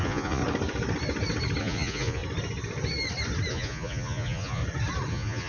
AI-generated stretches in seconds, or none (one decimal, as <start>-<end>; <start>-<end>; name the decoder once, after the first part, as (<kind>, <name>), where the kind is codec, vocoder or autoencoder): 0.0-0.4 (vocoder, Vocos); 1.6-2.2; 3.5-4.6; 5.1-5.5